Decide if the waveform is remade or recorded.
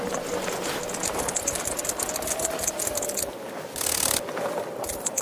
recorded